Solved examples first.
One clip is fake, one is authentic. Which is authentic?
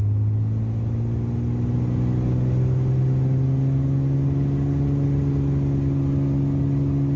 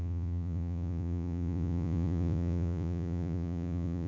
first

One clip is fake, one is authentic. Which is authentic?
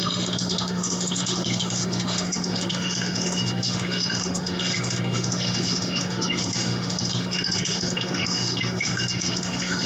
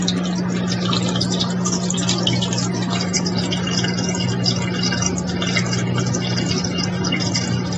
second